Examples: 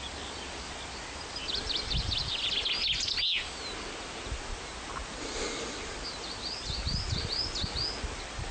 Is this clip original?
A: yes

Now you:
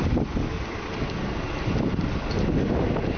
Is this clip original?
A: yes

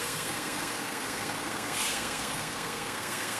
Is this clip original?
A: no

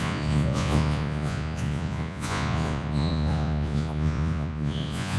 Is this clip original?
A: no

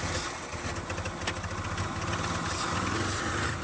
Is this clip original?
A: yes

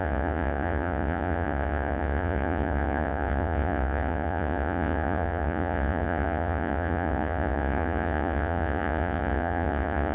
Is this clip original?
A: no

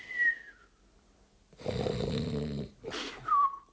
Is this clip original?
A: yes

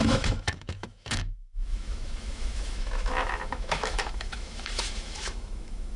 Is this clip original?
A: no